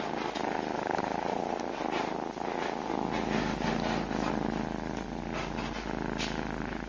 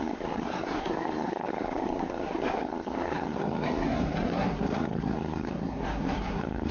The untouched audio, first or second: first